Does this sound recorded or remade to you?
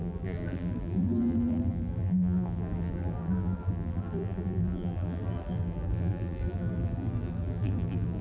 remade